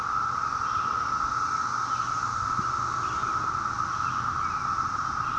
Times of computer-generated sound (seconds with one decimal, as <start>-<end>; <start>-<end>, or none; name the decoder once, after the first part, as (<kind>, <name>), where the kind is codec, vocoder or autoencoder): none